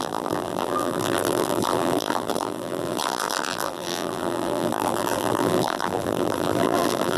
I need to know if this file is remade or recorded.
remade